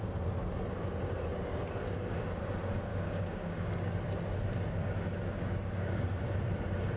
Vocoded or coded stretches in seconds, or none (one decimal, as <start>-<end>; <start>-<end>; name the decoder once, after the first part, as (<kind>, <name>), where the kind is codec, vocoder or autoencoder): 2.9-3.9 (codec, DAC); 4.8-6.2